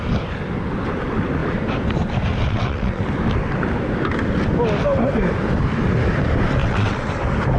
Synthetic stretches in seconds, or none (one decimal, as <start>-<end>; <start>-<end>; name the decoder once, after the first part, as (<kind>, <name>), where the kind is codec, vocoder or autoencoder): 2.4-3.0 (vocoder, WaveNeXt); 6.6-7.1